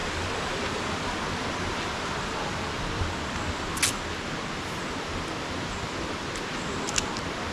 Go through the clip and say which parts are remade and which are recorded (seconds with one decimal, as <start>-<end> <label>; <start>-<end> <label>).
0.0-7.5 recorded